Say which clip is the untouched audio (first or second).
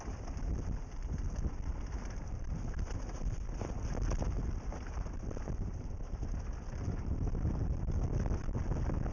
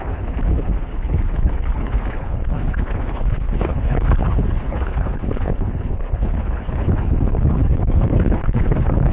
first